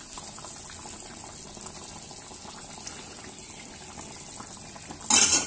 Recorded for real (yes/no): yes